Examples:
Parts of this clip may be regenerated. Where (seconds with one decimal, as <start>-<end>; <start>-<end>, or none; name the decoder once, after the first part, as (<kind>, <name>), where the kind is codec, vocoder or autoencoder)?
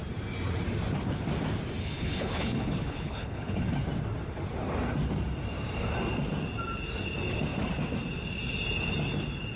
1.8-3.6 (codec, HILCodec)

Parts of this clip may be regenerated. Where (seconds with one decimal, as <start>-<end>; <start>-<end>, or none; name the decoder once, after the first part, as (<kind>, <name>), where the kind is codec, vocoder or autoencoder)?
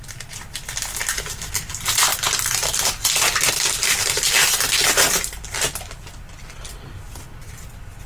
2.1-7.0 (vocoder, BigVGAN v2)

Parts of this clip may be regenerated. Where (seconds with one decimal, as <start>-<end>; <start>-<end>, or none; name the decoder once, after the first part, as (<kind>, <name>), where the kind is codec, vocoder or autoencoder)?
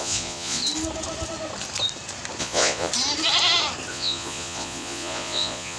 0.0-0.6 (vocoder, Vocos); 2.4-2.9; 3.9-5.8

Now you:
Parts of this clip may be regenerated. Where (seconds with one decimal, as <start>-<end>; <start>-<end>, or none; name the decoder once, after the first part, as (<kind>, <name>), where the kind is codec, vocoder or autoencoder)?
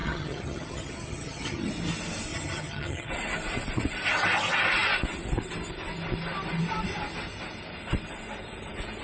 0.0-1.7 (vocoder, HiFi-GAN); 2.3-3.1